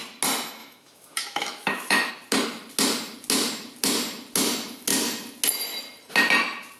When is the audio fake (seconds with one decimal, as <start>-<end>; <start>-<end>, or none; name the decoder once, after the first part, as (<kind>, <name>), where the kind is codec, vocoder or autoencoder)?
0.6-2.1 (autoencoder, DAC-VAE)